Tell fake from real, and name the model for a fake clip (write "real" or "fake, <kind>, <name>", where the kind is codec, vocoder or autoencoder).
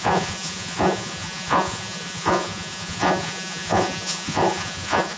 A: fake, vocoder, Vocos